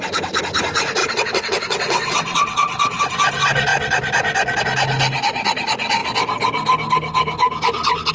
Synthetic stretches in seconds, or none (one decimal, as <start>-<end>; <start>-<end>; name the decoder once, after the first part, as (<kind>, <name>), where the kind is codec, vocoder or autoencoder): 1.0-3.0 (vocoder, WaveNeXt)